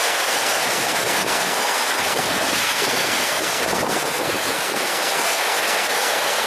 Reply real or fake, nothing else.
fake